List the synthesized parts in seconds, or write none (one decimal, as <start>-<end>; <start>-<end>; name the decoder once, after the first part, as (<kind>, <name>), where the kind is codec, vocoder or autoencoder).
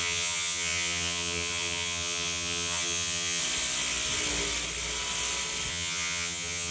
0.0-3.4 (vocoder, HiFi-GAN); 5.7-6.7